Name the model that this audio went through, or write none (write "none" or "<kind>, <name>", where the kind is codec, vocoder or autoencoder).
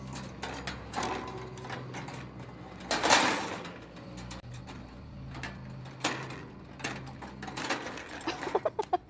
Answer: none